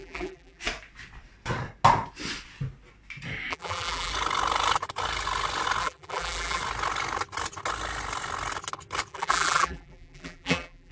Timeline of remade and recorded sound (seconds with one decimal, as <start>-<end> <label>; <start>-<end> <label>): 0.0-0.6 remade; 0.6-3.5 recorded; 3.5-4.1 remade; 4.1-5.8 recorded; 5.8-6.6 remade; 6.6-9.1 recorded; 9.1-10.9 remade